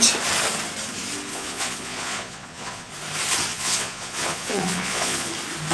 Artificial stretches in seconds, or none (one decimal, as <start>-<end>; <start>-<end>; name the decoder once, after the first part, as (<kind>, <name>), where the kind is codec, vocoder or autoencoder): 1.3-2.9 (vocoder, Vocos); 3.5-5.3